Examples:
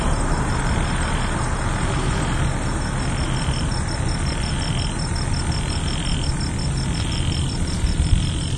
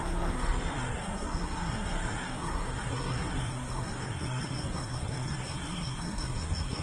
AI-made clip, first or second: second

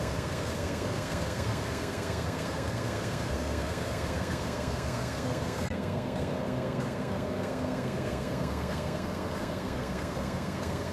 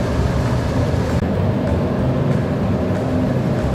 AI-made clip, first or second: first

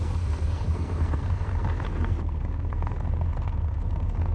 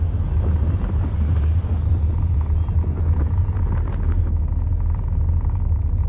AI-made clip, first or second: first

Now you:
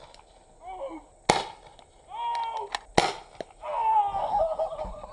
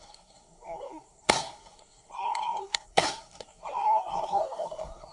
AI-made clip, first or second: second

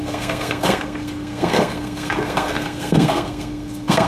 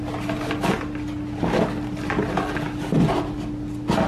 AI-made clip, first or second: first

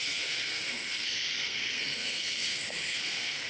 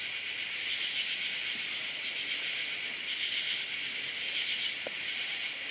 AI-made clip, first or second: first